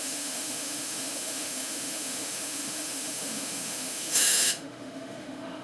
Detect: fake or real fake